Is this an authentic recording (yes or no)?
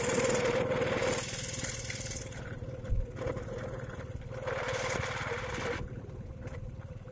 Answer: yes